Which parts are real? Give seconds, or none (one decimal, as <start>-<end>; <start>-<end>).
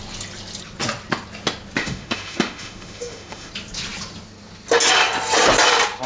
0.0-1.8; 3.5-6.1